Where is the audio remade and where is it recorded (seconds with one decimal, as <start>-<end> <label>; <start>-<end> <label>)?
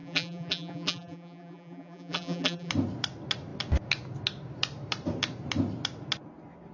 0.0-2.7 remade; 2.7-6.7 recorded